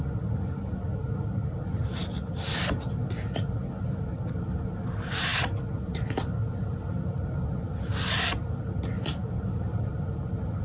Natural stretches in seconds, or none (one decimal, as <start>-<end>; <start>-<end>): 0.0-2.0; 2.5-9.2; 9.9-10.6